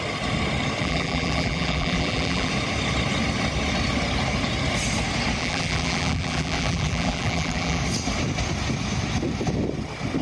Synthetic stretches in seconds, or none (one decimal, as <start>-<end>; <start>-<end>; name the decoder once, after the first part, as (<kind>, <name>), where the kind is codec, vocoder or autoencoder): 0.8-2.5 (vocoder, BigVGAN v2); 5.4-7.8